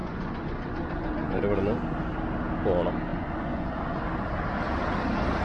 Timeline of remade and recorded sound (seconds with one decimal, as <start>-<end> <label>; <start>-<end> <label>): 0.0-1.4 remade; 1.4-3.1 recorded; 3.1-4.0 remade; 4.0-5.4 recorded